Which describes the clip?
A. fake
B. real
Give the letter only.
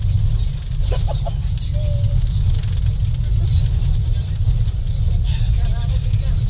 B